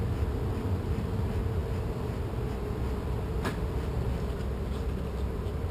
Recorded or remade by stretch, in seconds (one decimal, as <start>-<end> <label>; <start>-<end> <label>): 0.0-5.7 recorded